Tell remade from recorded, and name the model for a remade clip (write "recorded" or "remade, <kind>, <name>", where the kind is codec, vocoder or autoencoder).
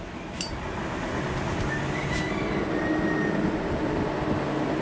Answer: recorded